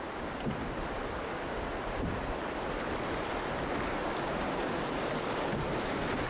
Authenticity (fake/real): real